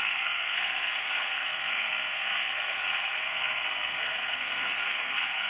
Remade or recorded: remade